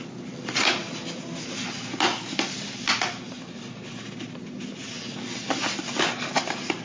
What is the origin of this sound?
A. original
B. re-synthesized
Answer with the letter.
A